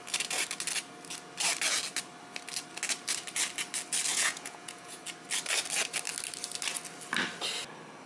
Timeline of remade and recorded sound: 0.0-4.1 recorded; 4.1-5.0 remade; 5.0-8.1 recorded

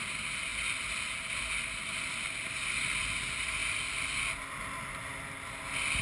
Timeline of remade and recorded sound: 0.0-6.0 recorded